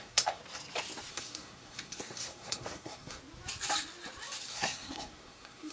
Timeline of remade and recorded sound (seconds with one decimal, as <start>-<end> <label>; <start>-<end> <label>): 0.0-0.4 remade; 0.4-1.1 recorded; 1.1-3.2 remade; 3.2-4.5 recorded; 4.5-5.7 remade